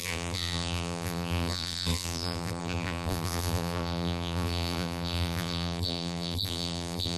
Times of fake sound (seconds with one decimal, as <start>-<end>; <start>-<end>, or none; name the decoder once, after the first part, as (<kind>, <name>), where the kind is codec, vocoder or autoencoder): 0.0-7.2 (vocoder, BigVGAN v2)